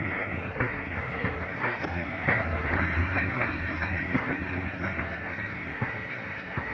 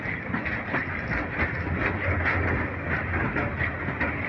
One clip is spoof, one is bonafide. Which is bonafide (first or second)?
second